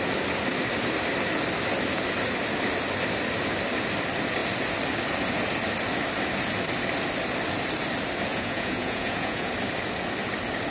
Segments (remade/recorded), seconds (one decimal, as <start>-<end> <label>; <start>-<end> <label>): 0.0-8.3 recorded; 8.3-9.5 remade; 9.5-10.7 recorded